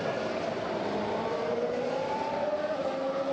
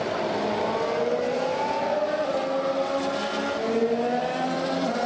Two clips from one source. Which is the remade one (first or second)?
first